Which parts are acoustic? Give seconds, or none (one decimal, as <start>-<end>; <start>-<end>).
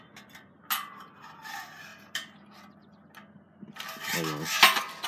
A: 0.0-5.1